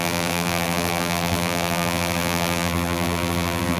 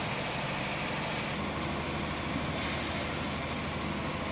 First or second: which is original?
second